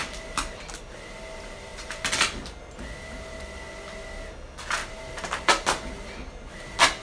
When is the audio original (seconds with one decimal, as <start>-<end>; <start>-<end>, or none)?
0.0-7.0